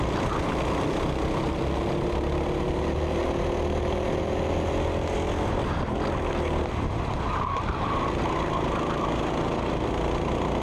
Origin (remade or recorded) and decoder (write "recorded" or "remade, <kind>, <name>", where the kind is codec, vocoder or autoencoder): recorded